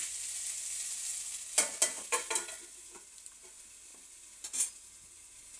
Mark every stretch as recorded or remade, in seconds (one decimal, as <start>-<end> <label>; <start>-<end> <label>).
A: 0.0-5.6 recorded